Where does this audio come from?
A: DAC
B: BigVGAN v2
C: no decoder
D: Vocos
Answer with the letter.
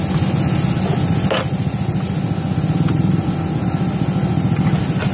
C